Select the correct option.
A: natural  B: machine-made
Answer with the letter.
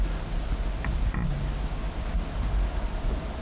A